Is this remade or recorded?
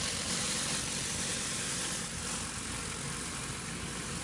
recorded